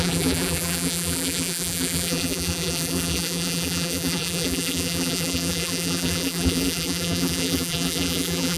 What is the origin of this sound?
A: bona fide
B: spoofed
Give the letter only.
B